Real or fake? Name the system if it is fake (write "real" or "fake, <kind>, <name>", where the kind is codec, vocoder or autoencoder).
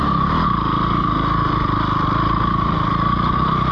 real